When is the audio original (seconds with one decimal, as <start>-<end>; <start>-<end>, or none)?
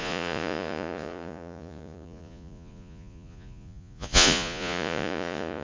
none